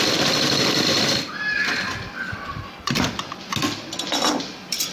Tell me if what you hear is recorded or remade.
recorded